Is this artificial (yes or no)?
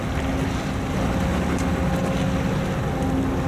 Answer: no